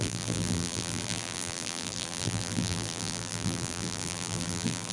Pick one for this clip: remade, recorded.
remade